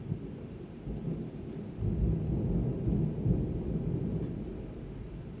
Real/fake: real